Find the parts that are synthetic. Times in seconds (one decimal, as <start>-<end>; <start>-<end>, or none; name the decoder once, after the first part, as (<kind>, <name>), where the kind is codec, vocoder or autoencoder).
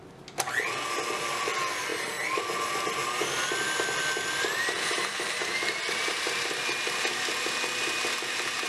none